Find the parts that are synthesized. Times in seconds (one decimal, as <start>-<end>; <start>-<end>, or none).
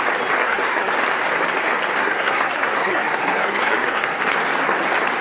0.4-0.9; 2.0-4.2